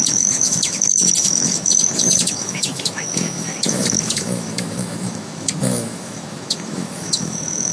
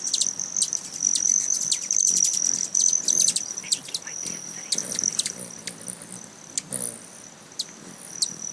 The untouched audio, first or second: second